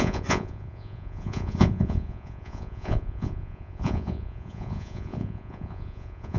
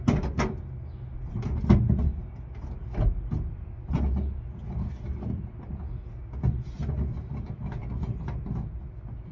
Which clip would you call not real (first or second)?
first